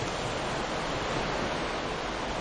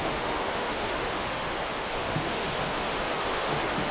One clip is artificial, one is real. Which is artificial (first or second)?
second